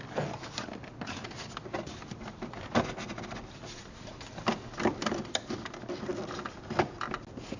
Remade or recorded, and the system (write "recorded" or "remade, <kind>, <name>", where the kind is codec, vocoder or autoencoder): recorded